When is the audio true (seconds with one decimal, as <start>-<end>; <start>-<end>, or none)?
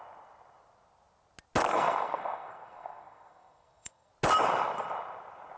0.0-1.7; 4.1-5.6